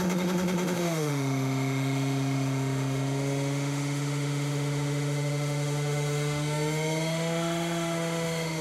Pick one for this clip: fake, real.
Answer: fake